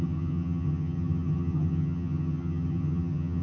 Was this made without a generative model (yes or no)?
no